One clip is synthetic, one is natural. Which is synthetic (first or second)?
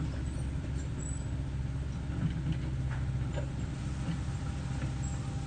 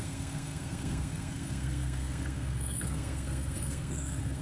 second